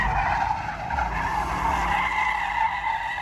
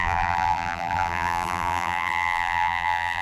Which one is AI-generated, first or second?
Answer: second